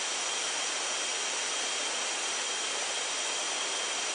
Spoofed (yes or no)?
no